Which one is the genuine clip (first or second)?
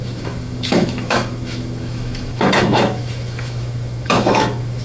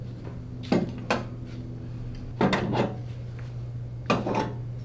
second